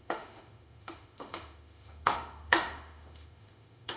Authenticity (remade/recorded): remade